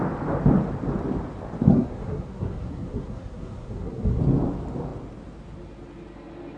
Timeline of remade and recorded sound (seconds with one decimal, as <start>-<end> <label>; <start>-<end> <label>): 0.0-1.7 recorded; 1.7-4.2 remade; 4.2-6.6 recorded

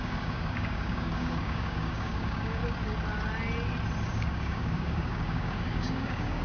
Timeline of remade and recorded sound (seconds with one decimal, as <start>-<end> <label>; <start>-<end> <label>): 0.0-2.6 remade; 2.6-4.1 recorded; 4.1-6.4 remade

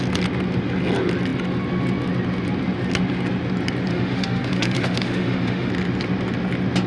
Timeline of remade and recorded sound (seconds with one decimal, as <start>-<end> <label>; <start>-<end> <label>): 0.0-3.9 recorded; 3.9-5.7 remade; 5.7-6.9 recorded

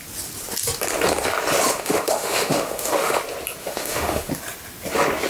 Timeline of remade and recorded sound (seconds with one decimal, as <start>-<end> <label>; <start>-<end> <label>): 0.0-1.7 recorded; 1.7-3.2 remade; 3.2-3.6 recorded; 3.6-4.3 remade; 4.3-5.3 recorded

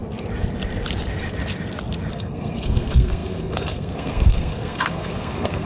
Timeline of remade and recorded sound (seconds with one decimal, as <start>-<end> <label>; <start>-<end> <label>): 0.0-2.1 recorded; 2.1-5.7 remade